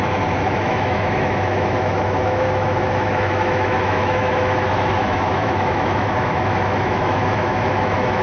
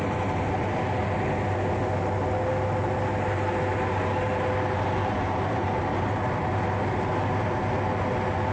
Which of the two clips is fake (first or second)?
first